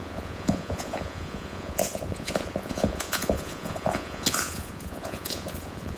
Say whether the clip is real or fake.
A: fake